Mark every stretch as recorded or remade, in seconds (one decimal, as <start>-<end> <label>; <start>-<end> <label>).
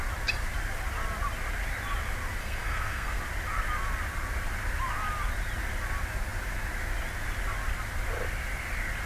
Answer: 0.0-2.4 recorded; 2.4-3.2 remade; 3.2-9.1 recorded